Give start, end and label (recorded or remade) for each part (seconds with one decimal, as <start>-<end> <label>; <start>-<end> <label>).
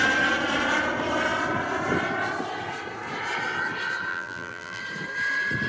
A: 0.0-4.1 recorded; 4.1-4.8 remade; 4.8-5.7 recorded